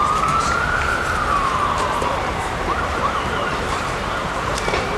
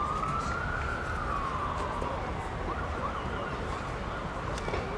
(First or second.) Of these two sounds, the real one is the second